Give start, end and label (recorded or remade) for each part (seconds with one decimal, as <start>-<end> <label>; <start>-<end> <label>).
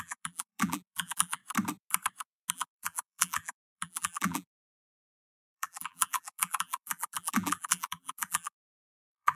0.0-1.4 remade; 1.4-2.5 recorded; 2.5-9.4 remade